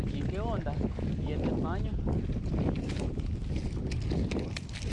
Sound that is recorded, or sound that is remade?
recorded